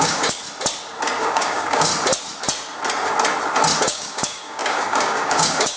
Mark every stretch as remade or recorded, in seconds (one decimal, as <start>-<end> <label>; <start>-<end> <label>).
0.0-0.4 remade; 0.4-1.2 recorded; 1.2-1.9 remade; 1.9-3.8 recorded; 3.8-5.8 remade